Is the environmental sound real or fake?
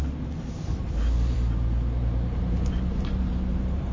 fake